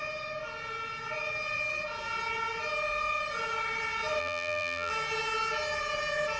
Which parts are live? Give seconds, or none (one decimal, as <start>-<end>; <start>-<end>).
0.0-4.2; 4.9-6.4